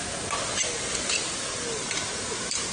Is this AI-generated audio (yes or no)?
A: no